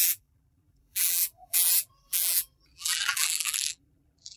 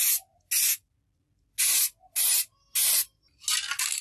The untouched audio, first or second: second